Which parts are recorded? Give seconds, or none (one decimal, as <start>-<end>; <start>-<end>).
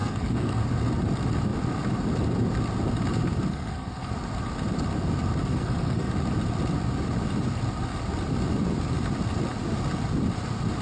0.6-3.5; 4.1-5.5; 6.1-10.8